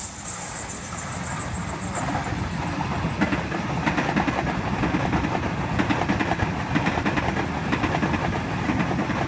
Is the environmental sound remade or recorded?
recorded